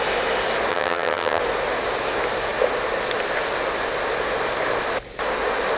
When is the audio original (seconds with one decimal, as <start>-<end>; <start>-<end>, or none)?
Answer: 0.0-0.7; 1.4-5.8

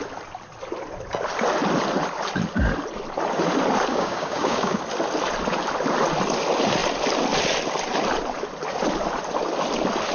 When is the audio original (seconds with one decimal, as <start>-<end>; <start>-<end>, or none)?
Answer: 0.0-3.9; 4.8-10.1